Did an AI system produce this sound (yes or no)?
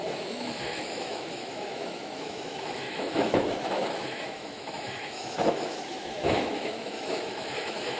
yes